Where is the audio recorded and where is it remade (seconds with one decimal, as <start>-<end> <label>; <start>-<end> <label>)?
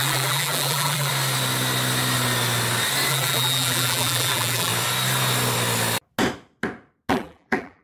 0.0-1.1 remade; 1.1-3.1 recorded; 3.1-4.7 remade; 4.7-7.1 recorded; 7.1-7.8 remade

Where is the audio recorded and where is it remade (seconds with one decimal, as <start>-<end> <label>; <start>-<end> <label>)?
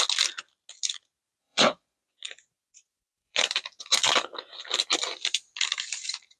0.0-1.4 recorded; 1.4-3.4 remade; 3.4-6.4 recorded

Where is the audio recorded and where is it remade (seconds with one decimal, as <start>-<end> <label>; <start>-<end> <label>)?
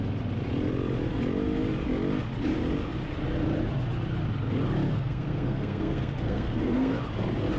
0.0-4.9 recorded; 4.9-6.9 remade; 6.9-7.6 recorded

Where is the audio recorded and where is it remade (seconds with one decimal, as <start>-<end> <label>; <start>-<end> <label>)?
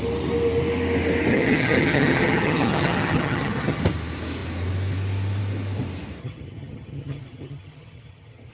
0.0-1.3 recorded; 1.3-3.8 remade; 3.8-6.2 recorded; 6.2-8.5 remade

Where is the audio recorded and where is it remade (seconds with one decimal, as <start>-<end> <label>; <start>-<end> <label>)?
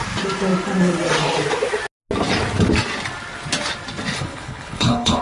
0.0-4.1 recorded; 4.1-5.2 remade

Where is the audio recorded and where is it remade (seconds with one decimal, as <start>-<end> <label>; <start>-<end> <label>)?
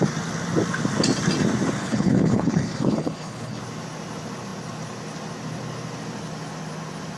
0.0-1.8 recorded; 1.8-3.6 remade; 3.6-7.2 recorded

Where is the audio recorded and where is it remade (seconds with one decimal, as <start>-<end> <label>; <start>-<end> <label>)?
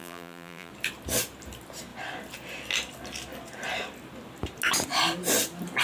0.0-0.7 remade; 0.7-5.8 recorded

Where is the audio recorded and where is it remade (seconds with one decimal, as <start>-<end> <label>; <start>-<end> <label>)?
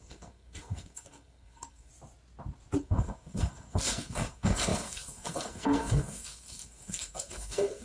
0.0-1.9 remade; 1.9-2.8 recorded; 2.8-7.8 remade